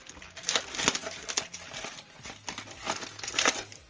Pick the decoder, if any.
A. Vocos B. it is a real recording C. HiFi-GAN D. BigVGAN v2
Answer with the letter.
B